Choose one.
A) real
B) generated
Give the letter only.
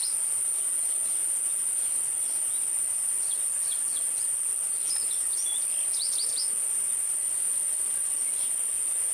A